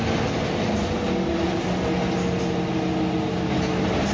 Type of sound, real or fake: real